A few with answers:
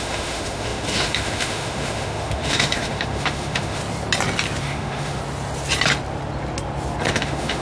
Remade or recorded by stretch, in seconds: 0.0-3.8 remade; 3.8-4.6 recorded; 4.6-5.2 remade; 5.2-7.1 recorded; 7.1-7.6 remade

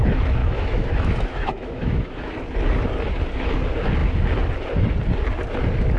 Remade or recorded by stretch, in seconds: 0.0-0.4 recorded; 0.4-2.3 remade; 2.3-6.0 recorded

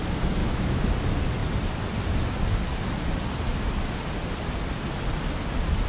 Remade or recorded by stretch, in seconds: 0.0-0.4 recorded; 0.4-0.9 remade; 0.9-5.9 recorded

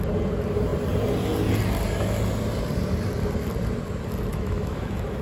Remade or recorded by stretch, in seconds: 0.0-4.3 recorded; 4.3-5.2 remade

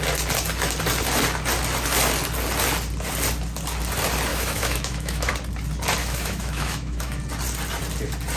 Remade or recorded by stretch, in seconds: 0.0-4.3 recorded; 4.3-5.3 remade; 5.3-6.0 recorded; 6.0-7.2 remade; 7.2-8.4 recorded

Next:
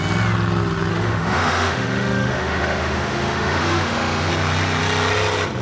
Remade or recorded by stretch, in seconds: 0.0-0.9 recorded; 0.9-4.3 remade; 4.3-5.6 recorded

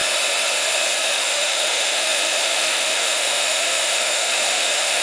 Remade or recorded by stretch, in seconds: 0.0-1.0 recorded; 1.0-5.0 remade

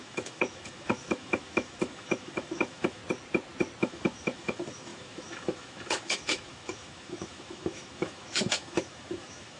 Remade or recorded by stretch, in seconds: 0.0-3.0 remade; 3.0-3.8 recorded; 3.8-9.6 remade